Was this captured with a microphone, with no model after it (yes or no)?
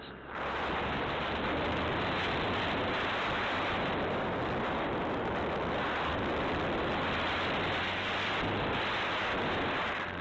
yes